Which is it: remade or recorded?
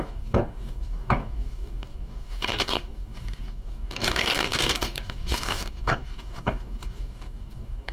remade